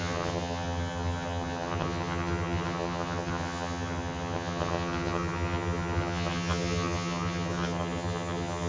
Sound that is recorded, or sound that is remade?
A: remade